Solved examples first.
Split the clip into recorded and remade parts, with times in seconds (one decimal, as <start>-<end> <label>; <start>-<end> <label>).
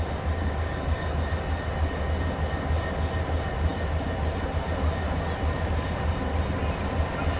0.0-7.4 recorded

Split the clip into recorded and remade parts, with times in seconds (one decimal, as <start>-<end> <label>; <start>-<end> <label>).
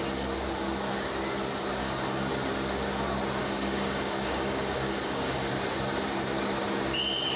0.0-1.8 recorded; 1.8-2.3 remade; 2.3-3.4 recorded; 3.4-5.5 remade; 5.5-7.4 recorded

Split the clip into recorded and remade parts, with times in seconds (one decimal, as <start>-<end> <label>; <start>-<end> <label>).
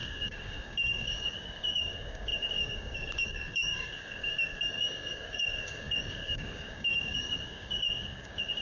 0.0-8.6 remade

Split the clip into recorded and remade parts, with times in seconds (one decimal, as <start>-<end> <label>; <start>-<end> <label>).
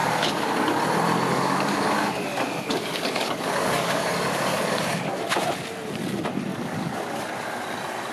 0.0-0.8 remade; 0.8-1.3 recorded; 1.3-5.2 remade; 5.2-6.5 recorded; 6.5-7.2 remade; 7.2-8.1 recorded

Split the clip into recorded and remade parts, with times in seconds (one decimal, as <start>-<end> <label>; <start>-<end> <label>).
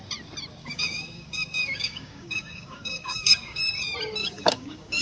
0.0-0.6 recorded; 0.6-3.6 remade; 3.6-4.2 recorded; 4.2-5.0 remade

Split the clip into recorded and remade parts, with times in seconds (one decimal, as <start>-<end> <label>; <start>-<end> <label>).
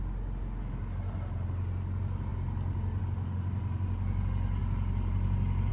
0.0-5.7 recorded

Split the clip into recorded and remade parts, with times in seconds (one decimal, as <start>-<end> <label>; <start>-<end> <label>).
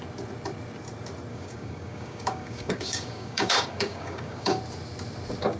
0.0-1.3 recorded; 1.3-4.6 remade; 4.6-5.6 recorded